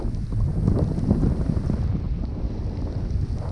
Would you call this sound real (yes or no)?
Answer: yes